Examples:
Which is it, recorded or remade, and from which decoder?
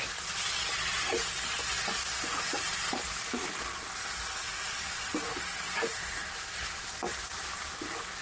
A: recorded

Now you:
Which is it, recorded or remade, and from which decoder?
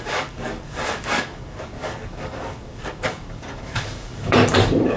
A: remade, codec, DAC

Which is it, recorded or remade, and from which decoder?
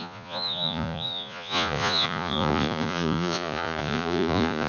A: remade, vocoder, Vocos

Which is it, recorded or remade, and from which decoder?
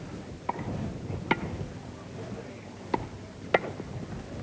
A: recorded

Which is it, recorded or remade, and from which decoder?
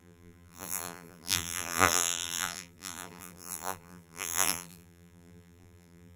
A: remade, vocoder, BigVGAN v2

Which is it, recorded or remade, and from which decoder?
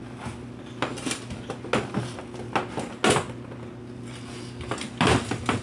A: recorded